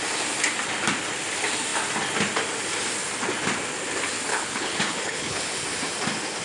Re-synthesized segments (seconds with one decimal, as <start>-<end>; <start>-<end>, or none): 4.3-5.6